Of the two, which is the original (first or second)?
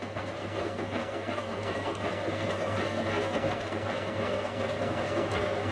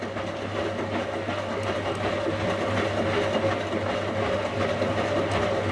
second